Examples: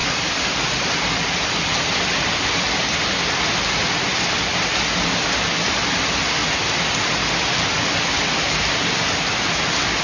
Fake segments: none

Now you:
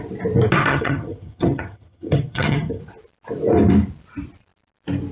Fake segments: 0.7-2.8 (vocoder, HiFi-GAN)

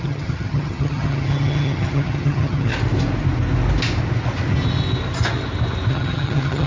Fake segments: 0.0-2.7 (vocoder, HiFi-GAN); 5.9-6.7